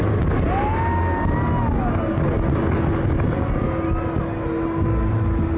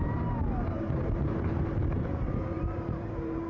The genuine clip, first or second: first